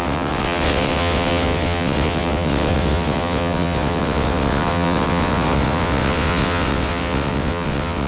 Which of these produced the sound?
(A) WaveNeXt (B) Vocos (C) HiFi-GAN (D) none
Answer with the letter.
A